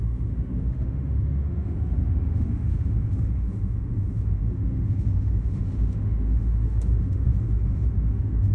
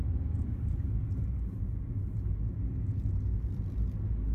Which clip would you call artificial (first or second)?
first